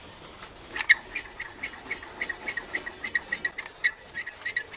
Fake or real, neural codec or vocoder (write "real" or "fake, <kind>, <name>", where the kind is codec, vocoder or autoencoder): real